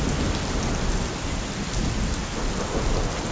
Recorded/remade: recorded